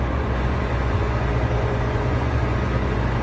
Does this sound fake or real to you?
fake